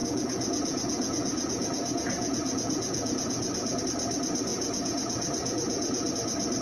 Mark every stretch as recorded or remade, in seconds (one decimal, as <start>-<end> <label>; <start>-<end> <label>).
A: 0.0-3.8 remade; 3.8-4.5 recorded; 4.5-6.1 remade; 6.1-6.6 recorded